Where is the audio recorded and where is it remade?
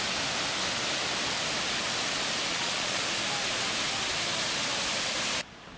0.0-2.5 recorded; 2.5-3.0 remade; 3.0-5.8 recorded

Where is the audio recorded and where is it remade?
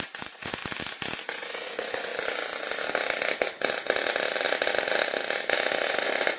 0.0-0.6 remade; 0.6-1.3 recorded; 1.3-2.1 remade; 2.1-5.9 recorded; 5.9-6.4 remade